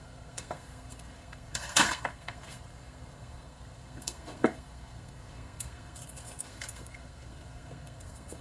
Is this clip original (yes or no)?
no